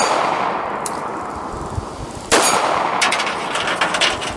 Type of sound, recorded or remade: recorded